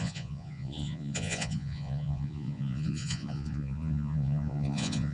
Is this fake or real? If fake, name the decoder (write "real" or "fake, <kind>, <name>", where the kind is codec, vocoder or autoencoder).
fake, vocoder, Vocos